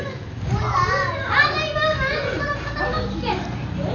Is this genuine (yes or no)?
yes